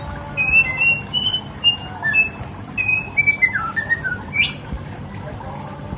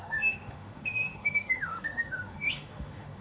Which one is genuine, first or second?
first